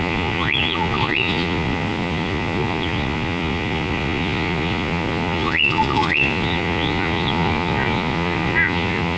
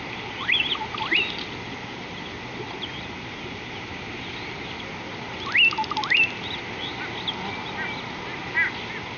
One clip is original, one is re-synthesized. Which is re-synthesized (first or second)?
first